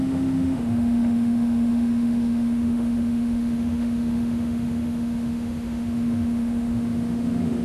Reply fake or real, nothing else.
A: fake